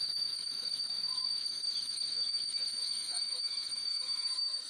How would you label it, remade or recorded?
remade